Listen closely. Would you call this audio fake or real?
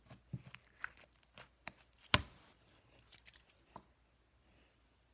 real